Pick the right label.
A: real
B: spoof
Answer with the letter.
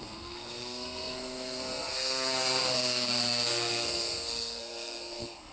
B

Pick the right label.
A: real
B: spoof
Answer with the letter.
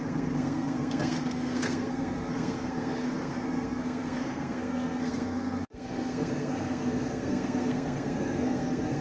B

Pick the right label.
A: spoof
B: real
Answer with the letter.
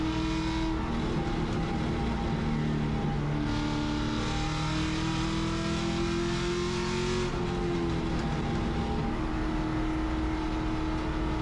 B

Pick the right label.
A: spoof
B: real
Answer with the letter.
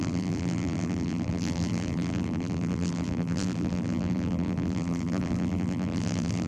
A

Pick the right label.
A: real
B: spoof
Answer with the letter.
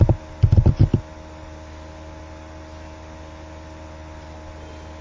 A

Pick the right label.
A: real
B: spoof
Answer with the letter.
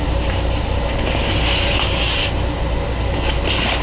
A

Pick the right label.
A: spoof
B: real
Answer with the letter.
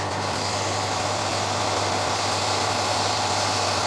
A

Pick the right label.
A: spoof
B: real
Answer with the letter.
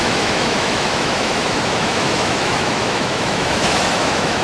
A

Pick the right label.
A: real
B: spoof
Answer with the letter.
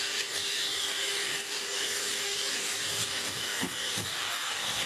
B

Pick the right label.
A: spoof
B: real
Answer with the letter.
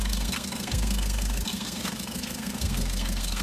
A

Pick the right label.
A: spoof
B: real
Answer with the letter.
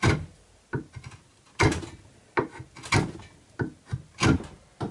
B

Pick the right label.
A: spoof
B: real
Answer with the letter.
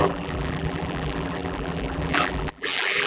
A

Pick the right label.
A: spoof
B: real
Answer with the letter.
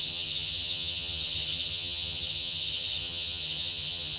A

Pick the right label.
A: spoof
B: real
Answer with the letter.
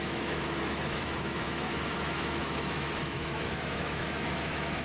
A